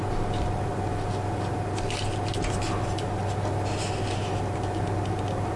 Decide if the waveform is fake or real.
real